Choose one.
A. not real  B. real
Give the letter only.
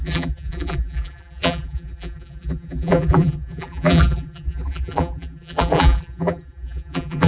A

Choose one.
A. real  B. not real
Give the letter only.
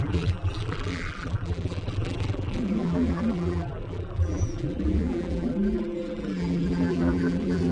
B